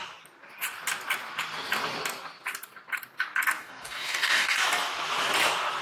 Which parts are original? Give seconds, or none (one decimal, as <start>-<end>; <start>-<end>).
0.0-3.6; 4.6-5.8